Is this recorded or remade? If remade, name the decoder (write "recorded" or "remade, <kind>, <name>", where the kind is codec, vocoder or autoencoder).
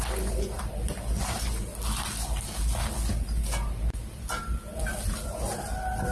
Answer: recorded